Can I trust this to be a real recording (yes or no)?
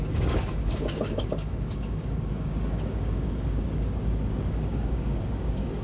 no